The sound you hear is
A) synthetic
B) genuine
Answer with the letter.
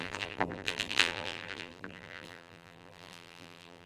A